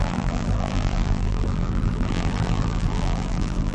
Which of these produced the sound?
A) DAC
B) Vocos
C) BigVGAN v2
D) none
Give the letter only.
C